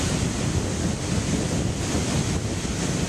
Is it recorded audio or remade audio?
recorded